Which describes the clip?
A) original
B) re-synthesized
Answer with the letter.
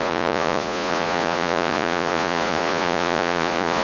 B